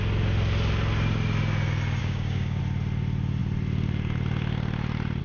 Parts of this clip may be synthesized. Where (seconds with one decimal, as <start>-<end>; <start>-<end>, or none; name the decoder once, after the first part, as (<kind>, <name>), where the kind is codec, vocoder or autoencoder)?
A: 2.0-2.6 (codec, DAC)